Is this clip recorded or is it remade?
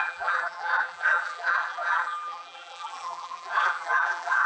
remade